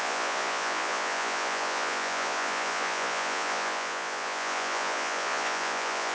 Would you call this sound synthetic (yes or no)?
yes